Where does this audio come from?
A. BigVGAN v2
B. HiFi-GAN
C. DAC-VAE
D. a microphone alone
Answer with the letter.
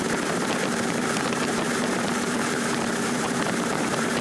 A